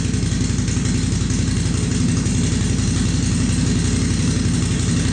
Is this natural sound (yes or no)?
yes